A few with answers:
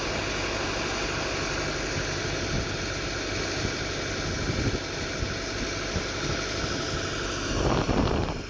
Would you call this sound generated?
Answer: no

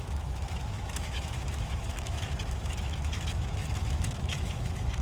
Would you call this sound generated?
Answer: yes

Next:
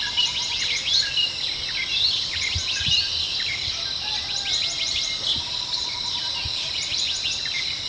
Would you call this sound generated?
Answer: no